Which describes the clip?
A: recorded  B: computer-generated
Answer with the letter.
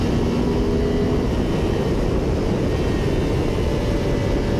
A